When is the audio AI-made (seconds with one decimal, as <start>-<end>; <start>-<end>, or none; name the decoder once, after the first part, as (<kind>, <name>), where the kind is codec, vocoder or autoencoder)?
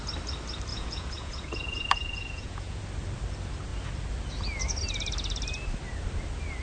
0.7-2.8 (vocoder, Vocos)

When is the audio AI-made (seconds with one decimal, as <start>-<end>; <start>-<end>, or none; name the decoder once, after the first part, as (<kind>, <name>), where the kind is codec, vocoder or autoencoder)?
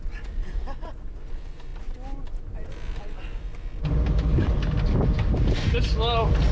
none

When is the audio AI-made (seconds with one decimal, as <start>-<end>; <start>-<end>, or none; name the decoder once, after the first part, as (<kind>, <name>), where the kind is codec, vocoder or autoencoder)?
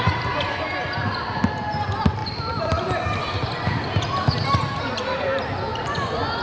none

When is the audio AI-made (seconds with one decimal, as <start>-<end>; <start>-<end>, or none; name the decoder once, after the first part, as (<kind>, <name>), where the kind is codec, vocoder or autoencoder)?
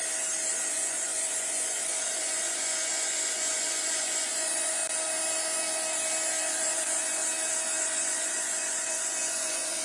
0.6-4.8 (vocoder, Vocos); 6.4-7.2; 7.8-9.8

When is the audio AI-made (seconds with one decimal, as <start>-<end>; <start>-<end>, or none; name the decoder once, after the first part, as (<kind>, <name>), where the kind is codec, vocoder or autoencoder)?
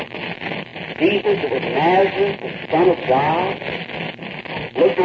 none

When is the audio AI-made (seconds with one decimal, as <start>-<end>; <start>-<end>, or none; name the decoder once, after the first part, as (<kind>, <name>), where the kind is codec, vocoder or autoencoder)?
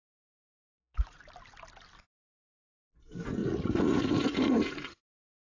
0.0-1.2 (vocoder, Vocos); 3.4-5.0